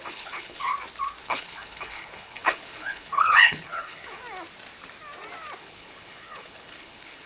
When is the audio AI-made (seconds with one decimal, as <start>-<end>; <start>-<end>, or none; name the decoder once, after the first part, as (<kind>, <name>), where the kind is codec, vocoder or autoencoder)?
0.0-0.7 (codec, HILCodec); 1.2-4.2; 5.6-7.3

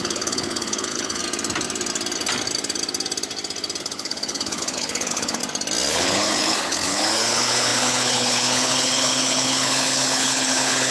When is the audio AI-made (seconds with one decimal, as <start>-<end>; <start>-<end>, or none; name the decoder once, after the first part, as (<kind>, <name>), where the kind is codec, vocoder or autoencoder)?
0.0-1.2 (codec, HILCodec); 3.8-5.4; 5.9-10.9

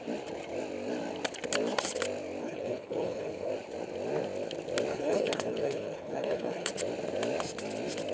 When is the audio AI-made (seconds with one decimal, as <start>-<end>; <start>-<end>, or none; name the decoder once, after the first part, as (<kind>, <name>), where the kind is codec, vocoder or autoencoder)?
2.4-3.5 (codec, HILCodec); 4.9-6.7

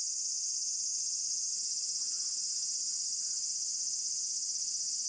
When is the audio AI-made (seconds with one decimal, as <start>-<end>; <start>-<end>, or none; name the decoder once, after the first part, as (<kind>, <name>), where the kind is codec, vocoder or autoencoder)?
none